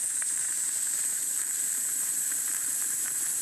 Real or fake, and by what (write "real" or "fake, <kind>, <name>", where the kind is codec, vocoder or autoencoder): fake, vocoder, BigVGAN v2